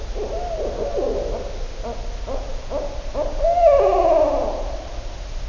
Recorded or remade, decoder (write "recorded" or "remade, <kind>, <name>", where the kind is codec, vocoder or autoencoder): recorded